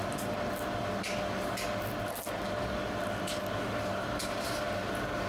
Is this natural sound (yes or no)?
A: yes